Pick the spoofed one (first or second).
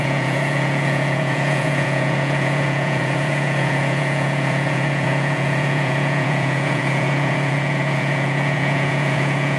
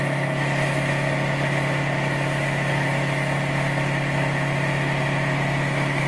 first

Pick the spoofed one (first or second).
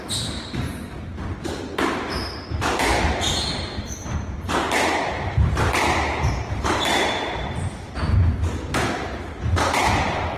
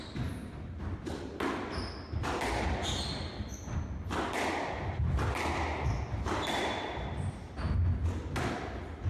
first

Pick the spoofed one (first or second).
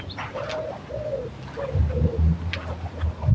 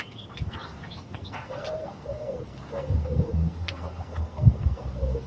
second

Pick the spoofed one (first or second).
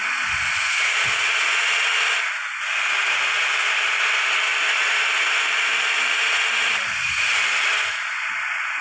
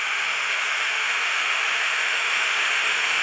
second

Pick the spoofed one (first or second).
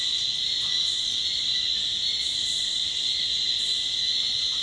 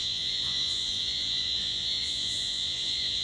second